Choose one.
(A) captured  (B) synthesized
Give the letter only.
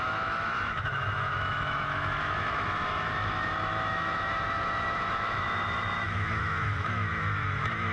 B